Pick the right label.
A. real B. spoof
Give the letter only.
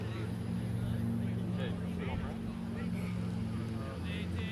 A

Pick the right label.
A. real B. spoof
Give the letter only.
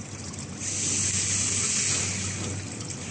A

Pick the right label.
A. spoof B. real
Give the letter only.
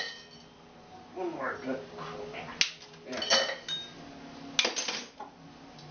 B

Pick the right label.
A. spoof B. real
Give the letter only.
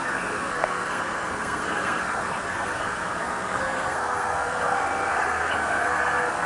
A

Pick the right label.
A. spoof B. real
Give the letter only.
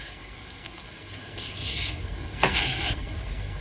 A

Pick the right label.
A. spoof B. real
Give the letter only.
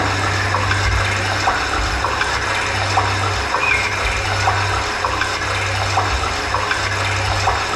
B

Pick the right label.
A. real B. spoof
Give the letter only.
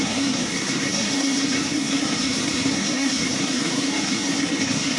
B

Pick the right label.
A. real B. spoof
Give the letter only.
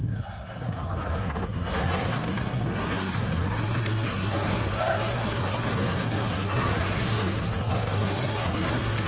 B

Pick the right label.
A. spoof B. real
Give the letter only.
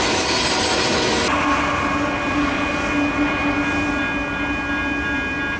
B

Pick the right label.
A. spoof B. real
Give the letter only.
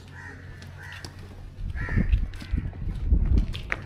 B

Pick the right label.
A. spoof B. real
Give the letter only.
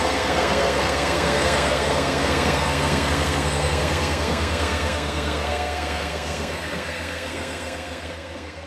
A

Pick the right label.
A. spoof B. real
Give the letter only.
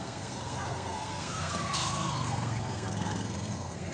A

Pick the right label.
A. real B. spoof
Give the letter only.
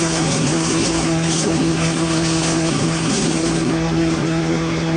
B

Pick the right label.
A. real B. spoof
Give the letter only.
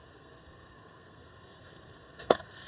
B